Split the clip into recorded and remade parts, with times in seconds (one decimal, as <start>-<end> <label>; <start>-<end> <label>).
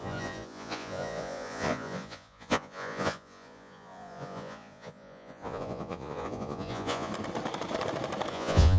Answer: 0.0-7.1 remade; 7.1-8.3 recorded; 8.3-8.8 remade